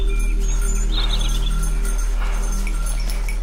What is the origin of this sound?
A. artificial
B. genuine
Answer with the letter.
B